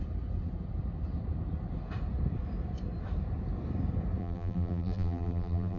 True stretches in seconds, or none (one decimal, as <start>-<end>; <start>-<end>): 0.0-4.2